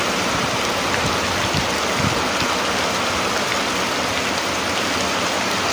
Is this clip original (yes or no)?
yes